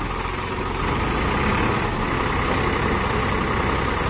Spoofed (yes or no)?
no